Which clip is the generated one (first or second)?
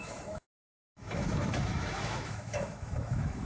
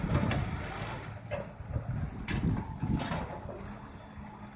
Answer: first